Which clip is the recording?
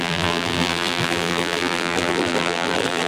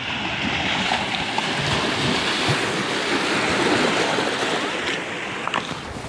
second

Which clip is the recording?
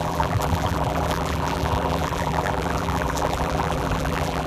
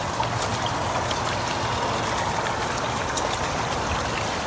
second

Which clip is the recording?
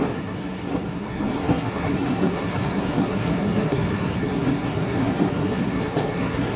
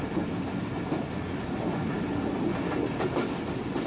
second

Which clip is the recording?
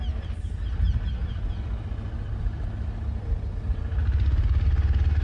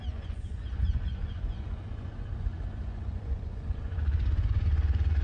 first